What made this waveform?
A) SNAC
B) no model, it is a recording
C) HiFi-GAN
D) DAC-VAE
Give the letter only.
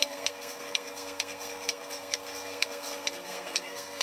A